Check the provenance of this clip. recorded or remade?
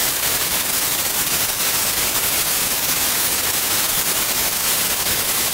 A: remade